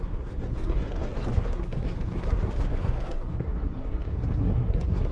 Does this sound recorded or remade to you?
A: remade